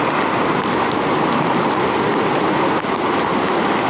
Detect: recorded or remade recorded